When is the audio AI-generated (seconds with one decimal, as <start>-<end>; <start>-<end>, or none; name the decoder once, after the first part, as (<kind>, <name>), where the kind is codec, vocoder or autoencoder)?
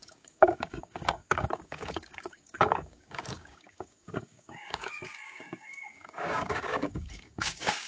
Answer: 0.0-7.9 (codec, DAC)